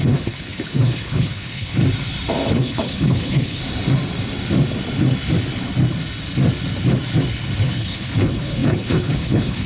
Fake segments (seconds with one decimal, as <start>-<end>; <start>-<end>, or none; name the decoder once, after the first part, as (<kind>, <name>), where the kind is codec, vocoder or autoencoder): 0.0-1.8 (codec, HILCodec); 2.5-3.6; 7.6-9.7